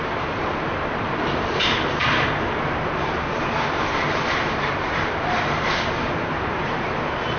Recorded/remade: remade